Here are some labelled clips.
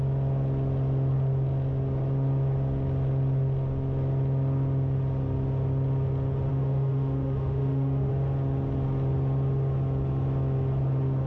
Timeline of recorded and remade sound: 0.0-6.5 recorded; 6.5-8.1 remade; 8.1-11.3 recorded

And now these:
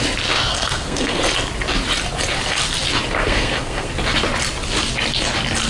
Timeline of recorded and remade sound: 0.0-0.5 recorded; 0.5-1.2 remade; 1.2-3.2 recorded; 3.2-3.9 remade; 3.9-5.7 recorded

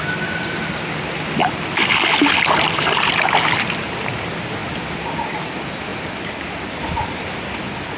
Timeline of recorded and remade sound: 0.0-8.0 recorded

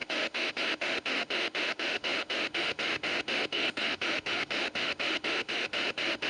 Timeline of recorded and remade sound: 0.0-6.3 remade

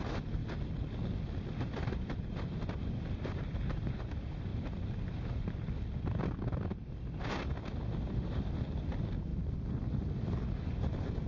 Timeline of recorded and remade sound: 0.0-0.4 remade; 0.4-1.5 recorded; 1.5-4.5 remade; 4.5-8.2 recorded; 8.2-9.3 remade; 9.3-10.6 recorded; 10.6-11.3 remade

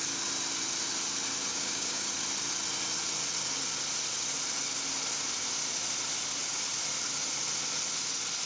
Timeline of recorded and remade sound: 0.0-1.5 recorded; 1.5-2.1 remade; 2.1-8.5 recorded